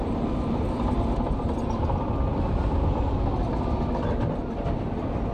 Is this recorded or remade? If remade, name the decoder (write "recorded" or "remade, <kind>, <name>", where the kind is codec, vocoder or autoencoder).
recorded